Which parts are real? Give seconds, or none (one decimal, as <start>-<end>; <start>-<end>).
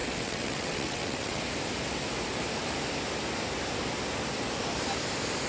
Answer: 1.4-5.5